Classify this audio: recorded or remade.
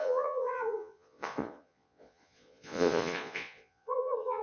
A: remade